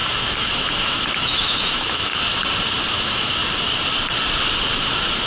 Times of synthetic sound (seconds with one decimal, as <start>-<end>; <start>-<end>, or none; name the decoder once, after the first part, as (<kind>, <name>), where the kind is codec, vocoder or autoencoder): 0.0-2.1 (autoencoder, DAC-VAE); 2.9-3.4